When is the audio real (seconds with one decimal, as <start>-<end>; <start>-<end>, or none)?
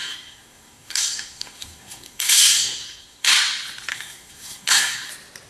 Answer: 3.3-3.9; 5.1-5.5